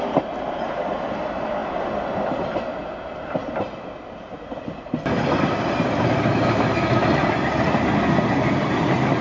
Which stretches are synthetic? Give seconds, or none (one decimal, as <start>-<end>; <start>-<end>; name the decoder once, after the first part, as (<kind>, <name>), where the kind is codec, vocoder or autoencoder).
none